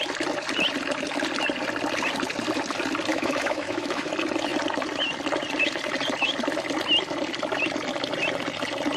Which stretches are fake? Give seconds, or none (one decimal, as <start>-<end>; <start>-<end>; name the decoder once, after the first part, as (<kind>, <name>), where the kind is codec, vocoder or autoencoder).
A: 3.1-4.1 (autoencoder, DAC-VAE)